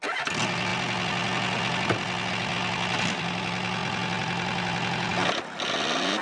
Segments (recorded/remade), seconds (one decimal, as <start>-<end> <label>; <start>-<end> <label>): 0.0-6.2 recorded